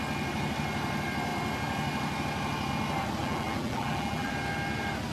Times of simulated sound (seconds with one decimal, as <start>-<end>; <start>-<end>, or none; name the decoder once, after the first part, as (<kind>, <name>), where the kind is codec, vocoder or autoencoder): 3.2-4.3 (vocoder, BigVGAN v2)